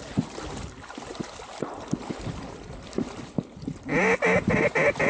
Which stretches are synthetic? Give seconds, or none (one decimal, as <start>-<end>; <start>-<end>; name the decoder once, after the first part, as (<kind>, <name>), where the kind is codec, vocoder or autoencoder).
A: none